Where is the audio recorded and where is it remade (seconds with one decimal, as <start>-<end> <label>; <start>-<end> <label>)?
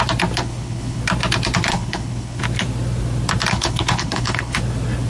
0.0-0.4 recorded; 0.4-1.0 remade; 1.0-1.7 recorded; 1.7-2.4 remade; 2.4-3.5 recorded; 3.5-4.6 remade; 4.6-5.1 recorded